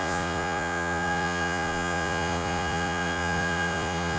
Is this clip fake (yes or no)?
yes